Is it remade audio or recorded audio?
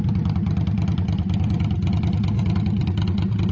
recorded